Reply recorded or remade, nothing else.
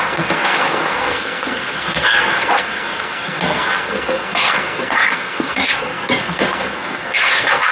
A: remade